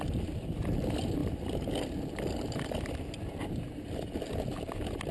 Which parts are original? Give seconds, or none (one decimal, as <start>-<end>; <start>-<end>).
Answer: 0.0-5.1